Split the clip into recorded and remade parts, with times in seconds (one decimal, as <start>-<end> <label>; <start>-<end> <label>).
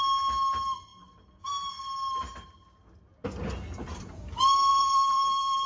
0.0-4.7 recorded; 4.7-5.7 remade